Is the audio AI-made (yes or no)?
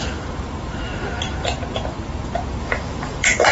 yes